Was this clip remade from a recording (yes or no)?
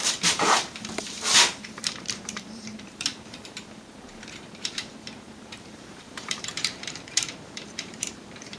yes